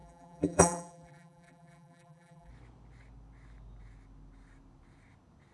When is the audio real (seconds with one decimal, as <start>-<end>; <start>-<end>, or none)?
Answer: 2.5-5.5